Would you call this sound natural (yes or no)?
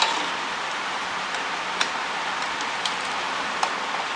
yes